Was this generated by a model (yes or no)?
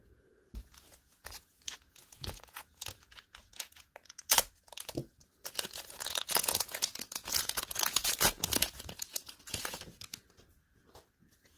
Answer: yes